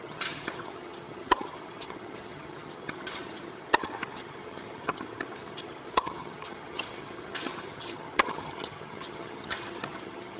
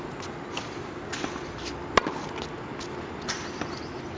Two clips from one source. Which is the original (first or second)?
second